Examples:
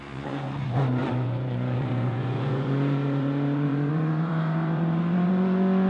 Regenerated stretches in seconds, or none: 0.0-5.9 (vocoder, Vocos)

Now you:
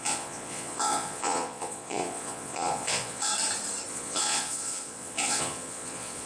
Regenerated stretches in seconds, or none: 0.0-3.3 (vocoder, Vocos); 3.9-6.3

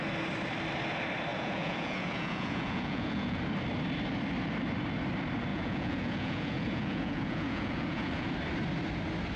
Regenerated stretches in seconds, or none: 1.3-3.4 (vocoder, Vocos); 5.5-8.3

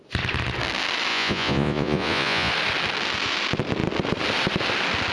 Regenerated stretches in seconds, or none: 1.1-2.5 (vocoder, Vocos)

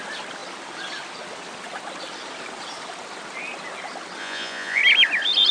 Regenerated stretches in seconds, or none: 4.2-4.8 (vocoder, Vocos)

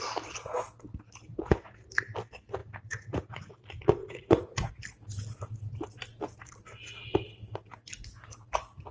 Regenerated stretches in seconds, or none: 2.6-3.5 (vocoder, Vocos); 4.0-4.7

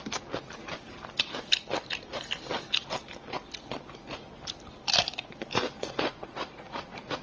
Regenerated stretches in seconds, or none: 5.8-7.2 (vocoder, Vocos)

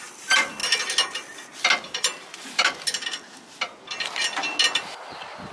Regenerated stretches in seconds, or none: none